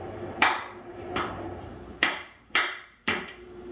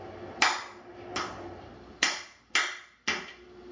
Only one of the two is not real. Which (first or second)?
first